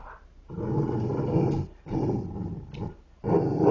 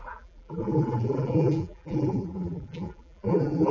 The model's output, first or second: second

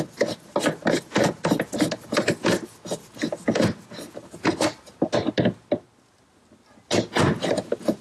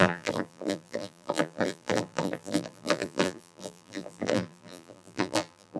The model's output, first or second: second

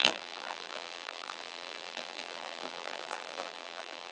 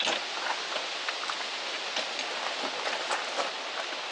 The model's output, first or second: first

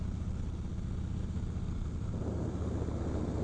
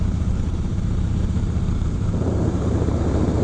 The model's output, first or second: second